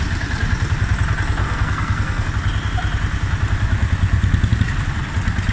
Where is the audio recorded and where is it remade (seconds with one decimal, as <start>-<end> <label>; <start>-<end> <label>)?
0.0-1.4 recorded; 1.4-2.3 remade; 2.3-5.5 recorded